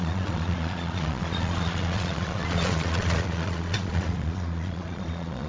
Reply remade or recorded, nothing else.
remade